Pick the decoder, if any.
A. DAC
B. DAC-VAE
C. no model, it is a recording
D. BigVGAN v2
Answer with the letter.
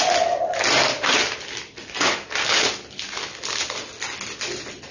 C